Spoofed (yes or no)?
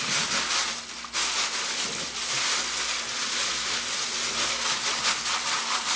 no